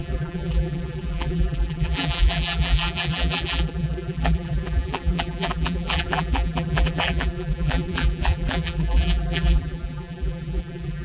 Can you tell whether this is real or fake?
fake